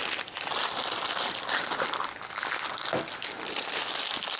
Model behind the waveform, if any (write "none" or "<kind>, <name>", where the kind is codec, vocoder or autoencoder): none